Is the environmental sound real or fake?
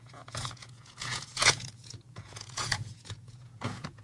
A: fake